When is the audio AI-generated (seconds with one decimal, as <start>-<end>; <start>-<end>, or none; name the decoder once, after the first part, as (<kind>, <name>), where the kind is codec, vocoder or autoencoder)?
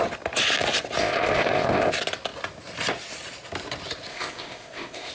1.0-1.9 (codec, ZipCodec); 4.1-5.1